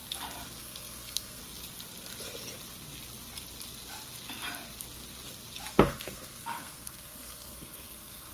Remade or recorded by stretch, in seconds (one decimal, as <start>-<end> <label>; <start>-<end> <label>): 0.0-0.6 recorded; 0.6-1.4 remade; 1.4-5.7 recorded; 5.7-8.3 remade